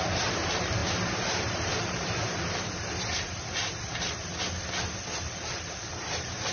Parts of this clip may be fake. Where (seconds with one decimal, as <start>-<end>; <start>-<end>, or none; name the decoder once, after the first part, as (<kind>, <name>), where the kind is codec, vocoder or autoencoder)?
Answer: 0.0-4.3 (vocoder, BigVGAN v2); 5.5-6.5